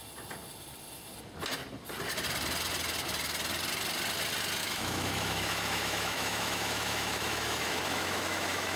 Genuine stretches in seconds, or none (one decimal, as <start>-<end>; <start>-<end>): 0.0-4.6